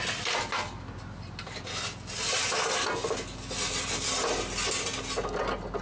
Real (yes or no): yes